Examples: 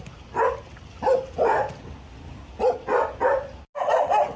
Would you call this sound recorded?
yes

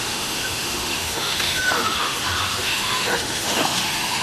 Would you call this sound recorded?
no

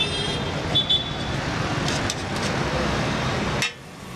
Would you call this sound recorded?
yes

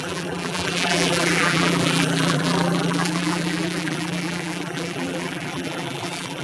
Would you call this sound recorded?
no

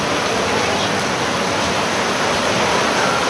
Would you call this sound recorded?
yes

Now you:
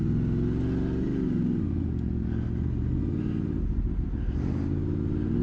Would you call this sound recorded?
yes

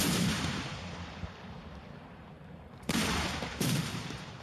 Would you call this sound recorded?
no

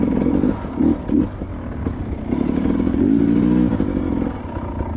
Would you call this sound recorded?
yes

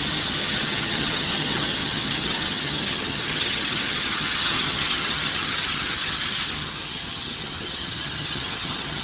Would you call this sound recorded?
no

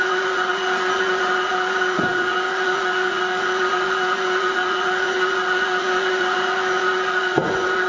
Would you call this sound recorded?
no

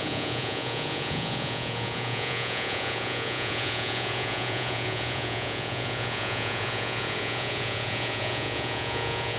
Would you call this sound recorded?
no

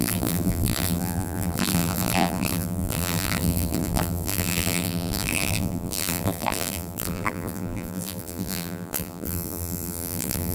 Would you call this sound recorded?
no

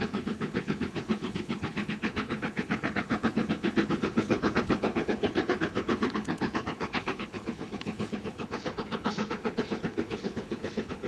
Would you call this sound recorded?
no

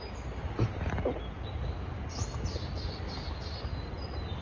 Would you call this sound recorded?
yes